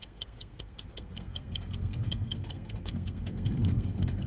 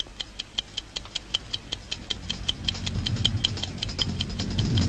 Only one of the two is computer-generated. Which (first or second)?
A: first